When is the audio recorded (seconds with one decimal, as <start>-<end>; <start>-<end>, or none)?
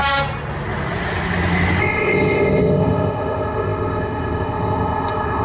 0.0-1.8